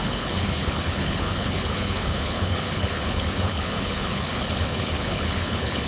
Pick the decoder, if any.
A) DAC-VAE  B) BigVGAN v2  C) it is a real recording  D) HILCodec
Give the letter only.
D